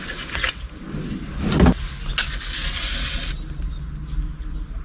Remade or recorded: recorded